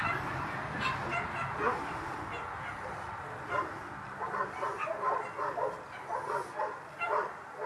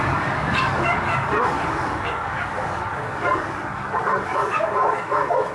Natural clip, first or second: first